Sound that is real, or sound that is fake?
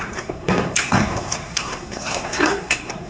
fake